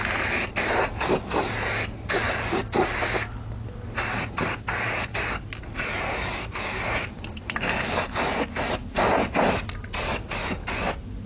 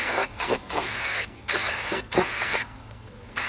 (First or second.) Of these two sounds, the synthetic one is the second